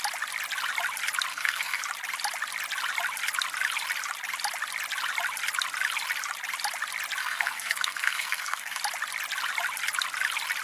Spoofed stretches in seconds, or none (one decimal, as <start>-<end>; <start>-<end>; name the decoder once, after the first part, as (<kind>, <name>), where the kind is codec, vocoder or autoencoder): 1.3-1.8 (codec, SNAC); 7.2-8.8